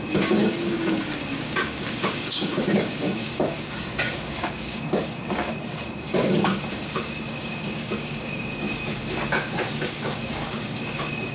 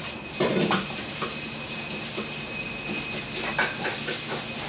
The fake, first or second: first